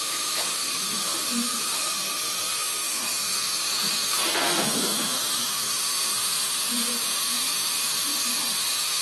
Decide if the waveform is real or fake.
fake